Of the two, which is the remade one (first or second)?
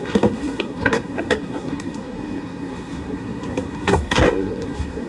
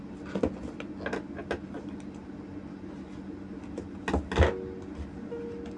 first